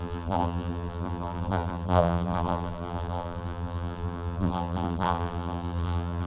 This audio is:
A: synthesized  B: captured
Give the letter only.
A